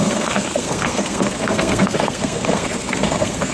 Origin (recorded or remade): remade